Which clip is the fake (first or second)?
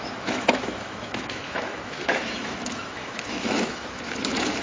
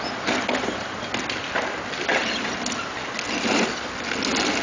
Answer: first